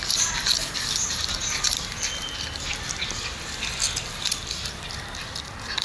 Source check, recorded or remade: recorded